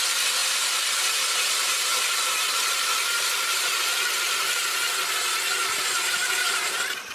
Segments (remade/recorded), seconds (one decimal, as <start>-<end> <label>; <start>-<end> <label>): 0.0-0.4 recorded; 0.4-3.8 remade; 3.8-5.6 recorded; 5.6-7.1 remade